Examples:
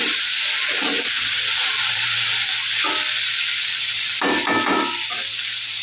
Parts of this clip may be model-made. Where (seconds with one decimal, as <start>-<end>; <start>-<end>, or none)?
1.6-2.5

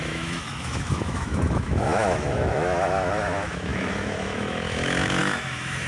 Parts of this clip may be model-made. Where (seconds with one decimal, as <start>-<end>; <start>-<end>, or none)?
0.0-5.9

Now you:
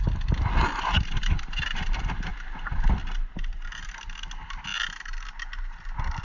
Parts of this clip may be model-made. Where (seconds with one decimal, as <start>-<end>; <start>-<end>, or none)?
none

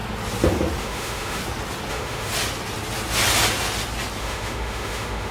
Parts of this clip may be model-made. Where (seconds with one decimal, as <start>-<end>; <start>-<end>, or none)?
0.8-1.4; 1.9-2.3; 4.2-5.3

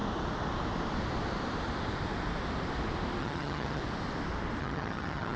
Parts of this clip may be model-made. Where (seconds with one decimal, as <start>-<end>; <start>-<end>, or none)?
3.2-3.8; 4.6-5.4

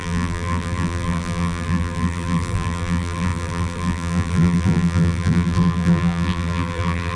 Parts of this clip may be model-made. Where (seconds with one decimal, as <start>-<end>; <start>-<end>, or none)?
0.0-7.2